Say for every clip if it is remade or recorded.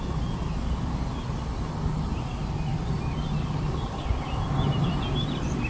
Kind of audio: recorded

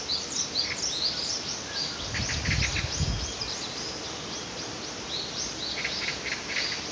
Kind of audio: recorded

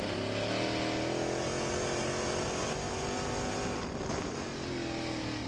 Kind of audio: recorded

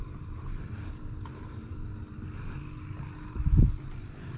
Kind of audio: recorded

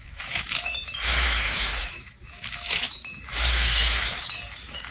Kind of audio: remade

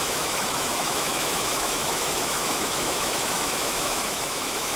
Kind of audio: remade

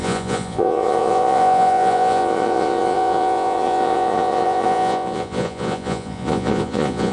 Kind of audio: remade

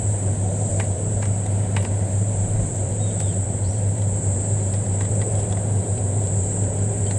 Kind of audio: remade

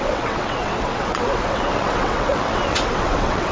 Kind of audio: remade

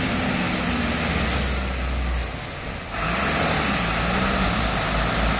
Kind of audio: recorded